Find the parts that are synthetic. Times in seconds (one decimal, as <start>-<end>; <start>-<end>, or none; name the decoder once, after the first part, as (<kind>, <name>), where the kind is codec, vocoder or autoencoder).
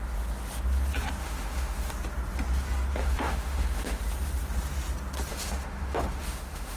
1.2-1.9 (autoencoder, DAC-VAE); 3.0-4.0; 5.3-6.8